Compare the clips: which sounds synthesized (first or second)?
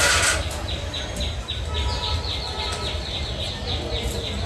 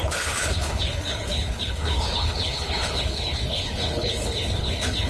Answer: second